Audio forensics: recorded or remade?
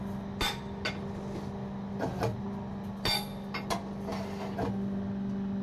recorded